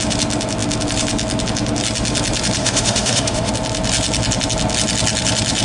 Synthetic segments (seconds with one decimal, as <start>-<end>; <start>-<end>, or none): 2.6-3.5